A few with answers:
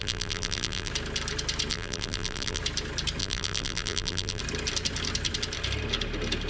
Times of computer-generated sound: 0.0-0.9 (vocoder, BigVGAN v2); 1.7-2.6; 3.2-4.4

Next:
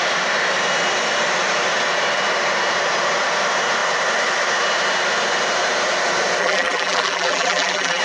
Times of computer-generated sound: 6.4-8.0 (vocoder, BigVGAN v2)

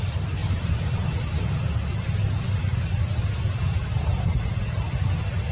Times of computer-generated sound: 0.4-1.4 (vocoder, BigVGAN v2)

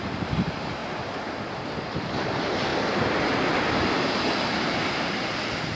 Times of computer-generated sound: 0.0-0.8 (vocoder, BigVGAN v2); 1.8-2.7

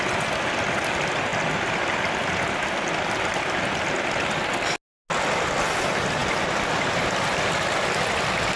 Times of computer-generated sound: none

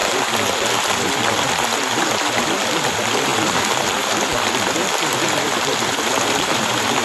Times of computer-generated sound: 2.9-7.0 (vocoder, BigVGAN v2)